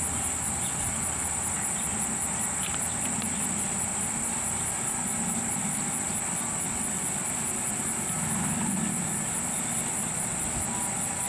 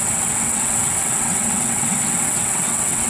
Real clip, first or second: first